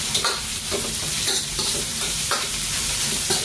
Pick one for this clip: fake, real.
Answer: fake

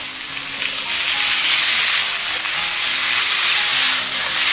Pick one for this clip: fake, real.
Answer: real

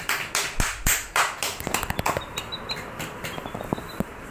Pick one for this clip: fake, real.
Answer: real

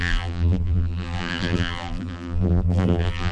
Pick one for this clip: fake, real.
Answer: fake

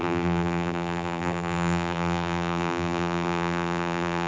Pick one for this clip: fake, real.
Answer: fake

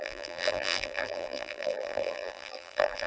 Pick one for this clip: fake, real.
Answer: fake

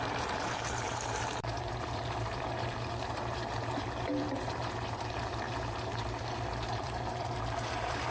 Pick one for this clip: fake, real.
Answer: fake